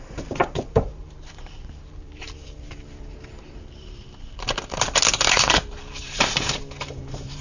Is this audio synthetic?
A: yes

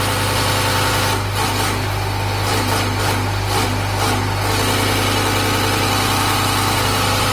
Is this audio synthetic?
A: no